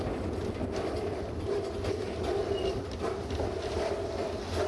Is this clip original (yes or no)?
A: yes